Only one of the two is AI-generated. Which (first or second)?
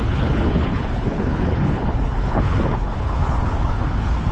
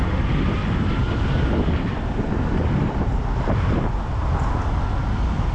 first